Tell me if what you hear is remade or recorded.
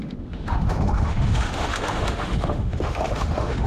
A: remade